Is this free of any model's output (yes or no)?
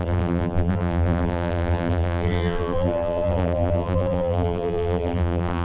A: no